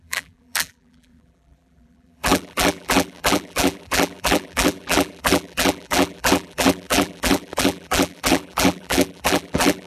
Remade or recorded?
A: remade